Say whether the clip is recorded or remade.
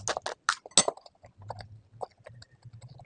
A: recorded